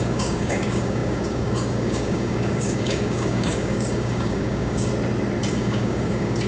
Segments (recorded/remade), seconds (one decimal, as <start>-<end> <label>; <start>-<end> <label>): 0.0-4.9 remade; 4.9-5.5 recorded; 5.5-6.5 remade